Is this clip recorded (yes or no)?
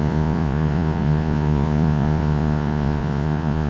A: no